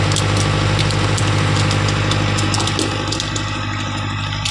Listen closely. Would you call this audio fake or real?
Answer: real